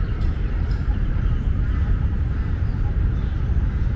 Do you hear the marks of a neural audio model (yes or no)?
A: yes